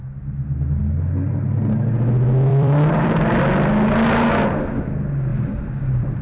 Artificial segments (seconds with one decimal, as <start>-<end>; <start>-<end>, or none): 2.5-3.4; 5.3-6.2